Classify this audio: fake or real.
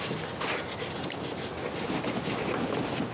real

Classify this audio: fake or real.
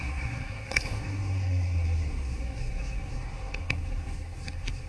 fake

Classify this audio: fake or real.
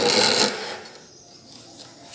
real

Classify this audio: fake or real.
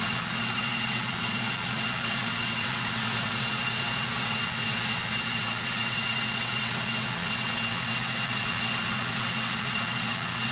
fake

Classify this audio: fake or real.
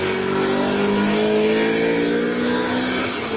real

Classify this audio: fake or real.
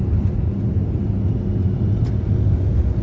real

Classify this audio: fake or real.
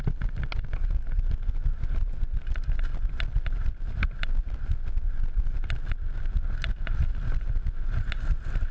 real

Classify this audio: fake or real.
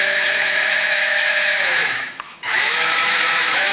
fake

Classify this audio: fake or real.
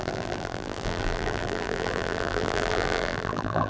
fake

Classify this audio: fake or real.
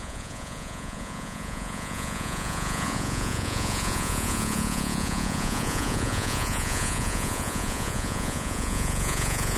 fake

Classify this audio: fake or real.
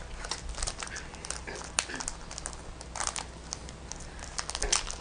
real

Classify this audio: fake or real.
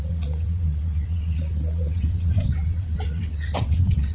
fake